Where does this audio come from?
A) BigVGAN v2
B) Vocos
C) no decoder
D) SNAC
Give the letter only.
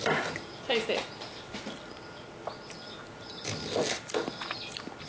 C